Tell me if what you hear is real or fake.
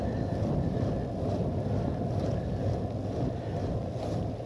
real